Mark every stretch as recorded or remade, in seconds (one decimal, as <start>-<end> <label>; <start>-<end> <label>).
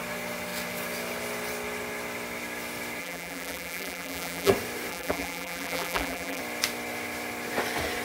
0.0-3.0 recorded; 3.0-4.5 remade; 4.5-4.9 recorded; 4.9-6.4 remade; 6.4-8.0 recorded